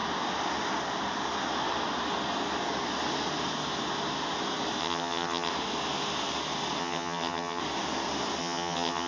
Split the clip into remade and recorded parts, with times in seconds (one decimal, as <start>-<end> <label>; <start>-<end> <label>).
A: 0.0-4.8 recorded; 4.8-5.5 remade; 5.5-6.8 recorded; 6.8-7.6 remade; 7.6-8.4 recorded; 8.4-9.1 remade